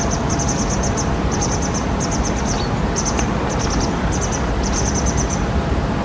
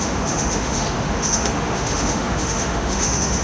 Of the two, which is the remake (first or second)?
second